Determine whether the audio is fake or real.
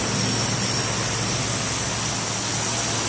real